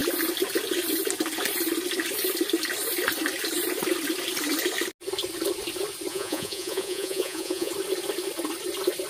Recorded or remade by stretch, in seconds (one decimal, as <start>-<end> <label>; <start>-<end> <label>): 0.0-6.1 recorded; 6.1-7.7 remade; 7.7-9.1 recorded